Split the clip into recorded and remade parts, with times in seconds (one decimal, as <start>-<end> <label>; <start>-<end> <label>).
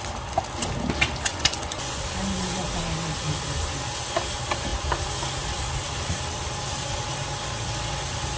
0.0-1.3 recorded; 1.3-2.0 remade; 2.0-8.4 recorded